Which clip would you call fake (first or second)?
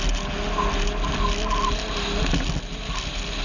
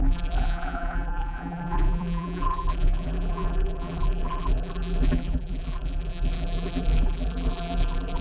second